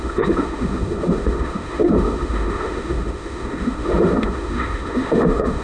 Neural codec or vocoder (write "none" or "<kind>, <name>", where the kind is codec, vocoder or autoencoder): autoencoder, DAC-VAE